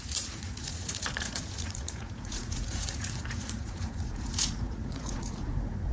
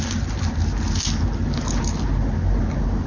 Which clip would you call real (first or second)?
second